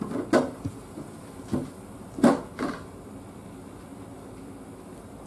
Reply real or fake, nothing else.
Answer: real